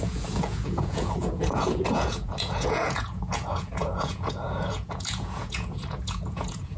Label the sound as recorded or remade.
remade